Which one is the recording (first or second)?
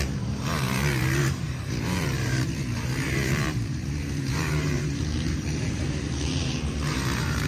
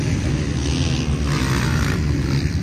second